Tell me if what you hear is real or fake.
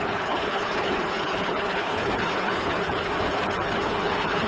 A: fake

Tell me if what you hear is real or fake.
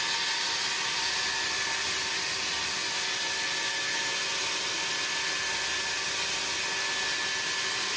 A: real